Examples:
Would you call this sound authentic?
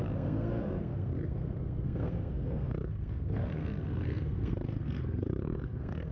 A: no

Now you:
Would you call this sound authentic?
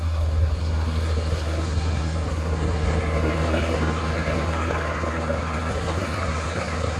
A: no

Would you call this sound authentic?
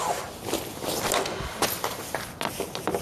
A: yes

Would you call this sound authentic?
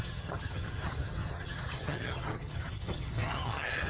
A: no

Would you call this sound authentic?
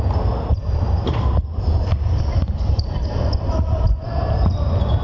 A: no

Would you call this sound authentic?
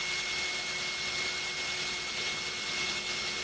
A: yes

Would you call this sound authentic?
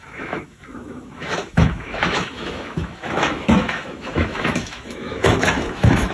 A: no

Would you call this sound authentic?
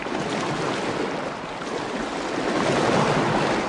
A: yes